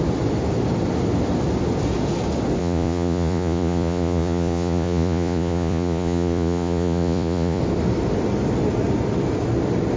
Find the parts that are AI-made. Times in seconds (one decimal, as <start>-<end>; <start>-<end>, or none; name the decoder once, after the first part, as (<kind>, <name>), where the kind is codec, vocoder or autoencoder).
2.6-7.6 (vocoder, Vocos)